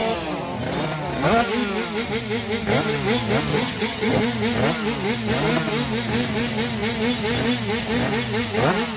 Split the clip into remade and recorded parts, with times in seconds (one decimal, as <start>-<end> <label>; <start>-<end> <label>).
0.0-3.5 recorded; 3.5-4.2 remade; 4.2-9.0 recorded